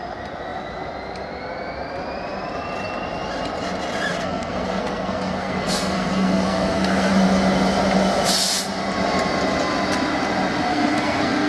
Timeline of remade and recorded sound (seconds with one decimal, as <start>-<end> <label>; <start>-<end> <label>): 0.0-4.1 recorded; 4.1-7.1 remade; 7.1-10.7 recorded; 10.7-11.5 remade